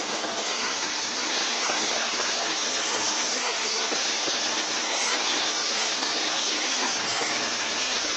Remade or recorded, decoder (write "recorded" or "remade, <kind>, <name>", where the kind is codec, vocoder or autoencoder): remade, codec, SNAC